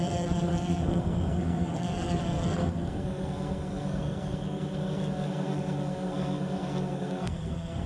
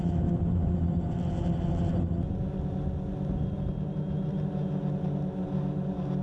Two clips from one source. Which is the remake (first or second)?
first